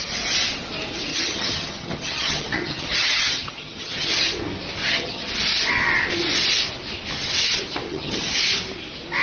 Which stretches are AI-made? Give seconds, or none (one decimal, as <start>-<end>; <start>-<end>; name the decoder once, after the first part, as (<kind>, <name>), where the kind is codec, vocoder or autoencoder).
1.1-4.3 (vocoder, HiFi-GAN); 4.8-5.3; 7.9-8.4